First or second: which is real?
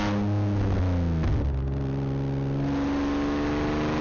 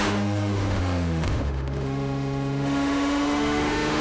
first